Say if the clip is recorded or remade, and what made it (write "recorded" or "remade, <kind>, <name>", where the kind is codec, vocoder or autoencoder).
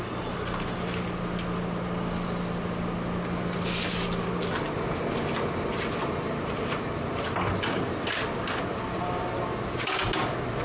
recorded